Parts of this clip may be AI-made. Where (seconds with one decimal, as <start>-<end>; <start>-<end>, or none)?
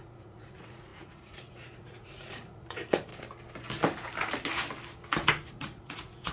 0.0-3.1; 5.5-6.3